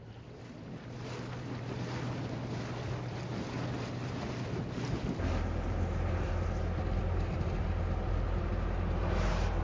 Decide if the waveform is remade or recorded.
recorded